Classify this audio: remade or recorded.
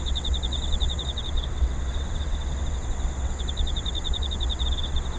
remade